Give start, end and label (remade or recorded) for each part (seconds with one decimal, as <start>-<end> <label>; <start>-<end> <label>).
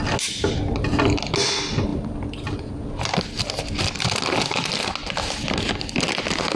0.0-6.6 recorded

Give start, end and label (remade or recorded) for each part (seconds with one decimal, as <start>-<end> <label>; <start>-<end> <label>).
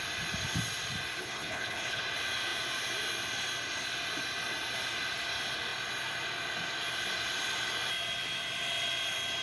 0.0-1.2 recorded; 1.2-2.0 remade; 2.0-9.4 recorded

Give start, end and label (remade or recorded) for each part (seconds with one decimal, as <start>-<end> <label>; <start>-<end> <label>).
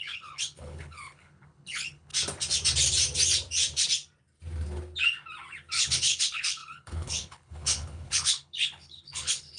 0.0-2.1 remade; 2.1-5.8 recorded; 5.8-9.6 remade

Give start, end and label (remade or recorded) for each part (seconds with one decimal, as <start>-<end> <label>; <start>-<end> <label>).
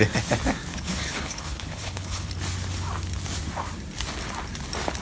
0.0-0.7 recorded; 0.7-2.3 remade; 2.3-5.0 recorded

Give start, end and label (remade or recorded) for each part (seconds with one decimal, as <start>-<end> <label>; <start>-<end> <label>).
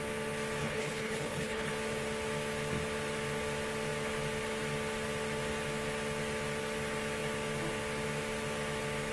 0.0-0.6 recorded; 0.6-1.7 remade; 1.7-9.1 recorded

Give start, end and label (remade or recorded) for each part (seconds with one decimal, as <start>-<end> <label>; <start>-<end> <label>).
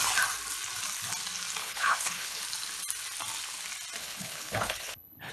0.0-1.6 recorded; 1.6-2.4 remade; 2.4-4.0 recorded; 4.0-5.3 remade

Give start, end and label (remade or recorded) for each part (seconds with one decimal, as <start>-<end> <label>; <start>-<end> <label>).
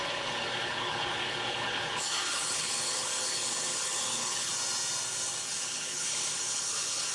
0.0-4.5 remade; 4.5-5.4 recorded; 5.4-7.1 remade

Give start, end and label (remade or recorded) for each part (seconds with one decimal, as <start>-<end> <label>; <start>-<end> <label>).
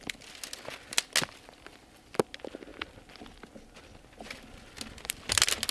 0.0-5.7 recorded